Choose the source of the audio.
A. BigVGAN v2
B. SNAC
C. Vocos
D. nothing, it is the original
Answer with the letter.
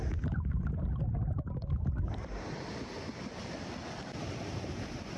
A